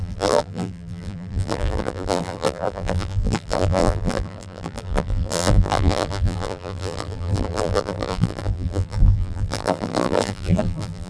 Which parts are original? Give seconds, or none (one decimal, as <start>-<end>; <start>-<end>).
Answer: none